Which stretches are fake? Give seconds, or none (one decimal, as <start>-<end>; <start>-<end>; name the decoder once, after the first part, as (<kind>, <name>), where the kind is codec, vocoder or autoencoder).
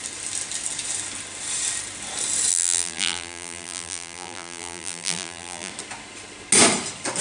2.5-5.7 (vocoder, BigVGAN v2)